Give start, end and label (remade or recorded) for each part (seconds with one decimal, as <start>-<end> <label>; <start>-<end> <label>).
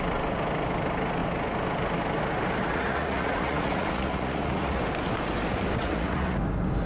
0.0-2.6 recorded; 2.6-4.8 remade; 4.8-5.8 recorded; 5.8-6.4 remade; 6.4-6.9 recorded